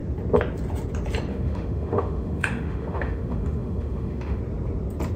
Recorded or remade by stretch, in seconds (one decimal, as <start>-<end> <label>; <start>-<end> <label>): 0.0-1.3 recorded; 1.3-4.4 remade; 4.4-5.2 recorded

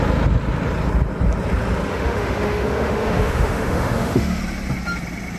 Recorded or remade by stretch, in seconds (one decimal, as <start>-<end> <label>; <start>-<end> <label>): 0.0-1.9 recorded; 1.9-4.4 remade; 4.4-5.4 recorded

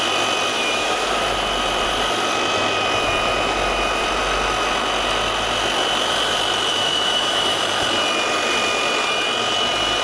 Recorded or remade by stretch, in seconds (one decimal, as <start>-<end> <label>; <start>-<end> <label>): 0.0-0.5 recorded; 0.5-1.2 remade; 1.2-6.7 recorded; 6.7-7.6 remade; 7.6-10.0 recorded

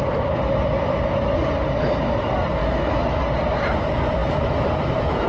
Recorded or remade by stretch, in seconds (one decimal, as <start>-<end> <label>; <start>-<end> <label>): 0.0-2.6 recorded; 2.6-3.2 remade; 3.2-4.2 recorded; 4.2-5.3 remade

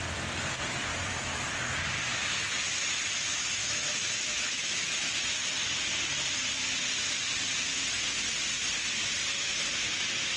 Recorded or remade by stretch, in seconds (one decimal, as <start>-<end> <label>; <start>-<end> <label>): 0.0-0.9 recorded; 0.9-1.4 remade; 1.4-3.6 recorded; 3.6-5.1 remade; 5.1-10.4 recorded

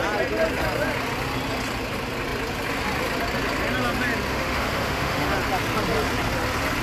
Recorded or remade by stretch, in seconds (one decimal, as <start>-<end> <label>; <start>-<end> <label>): 0.0-4.3 recorded; 4.3-5.3 remade; 5.3-6.8 recorded

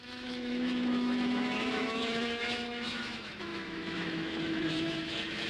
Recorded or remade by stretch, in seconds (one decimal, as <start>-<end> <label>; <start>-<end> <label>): 0.0-5.5 remade